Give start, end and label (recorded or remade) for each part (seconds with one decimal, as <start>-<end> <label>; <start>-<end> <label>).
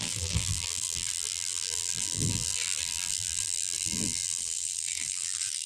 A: 0.0-5.7 remade